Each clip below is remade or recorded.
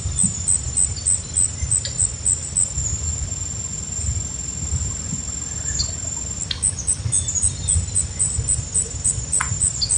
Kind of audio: recorded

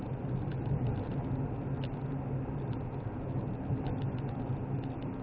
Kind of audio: recorded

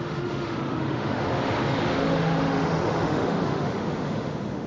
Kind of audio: remade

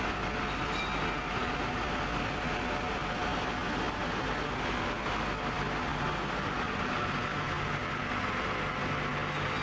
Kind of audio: recorded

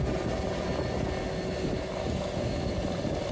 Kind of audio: recorded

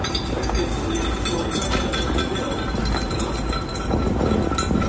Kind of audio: recorded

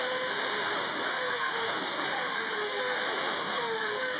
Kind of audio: remade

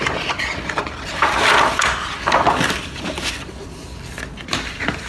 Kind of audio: recorded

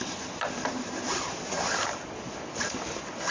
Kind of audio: recorded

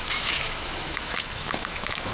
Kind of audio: remade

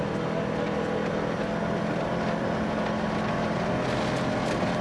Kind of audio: recorded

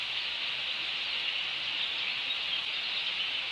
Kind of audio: recorded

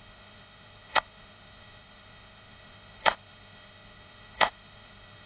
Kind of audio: remade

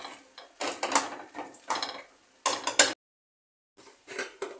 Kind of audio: recorded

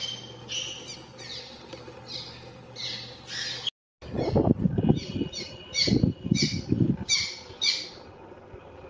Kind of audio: recorded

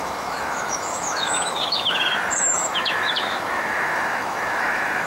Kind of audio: remade